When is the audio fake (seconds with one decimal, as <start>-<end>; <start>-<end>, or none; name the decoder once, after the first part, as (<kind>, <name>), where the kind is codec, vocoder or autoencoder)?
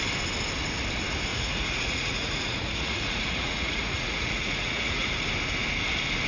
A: 1.3-5.1 (vocoder, Vocos)